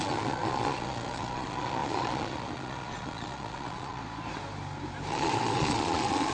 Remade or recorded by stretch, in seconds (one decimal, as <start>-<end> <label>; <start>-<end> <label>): 0.0-4.0 remade; 4.0-5.1 recorded; 5.1-6.3 remade